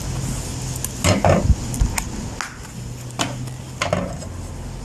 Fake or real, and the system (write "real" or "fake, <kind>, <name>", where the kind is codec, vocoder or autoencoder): real